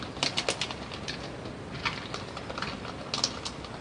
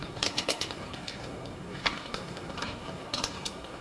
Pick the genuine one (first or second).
first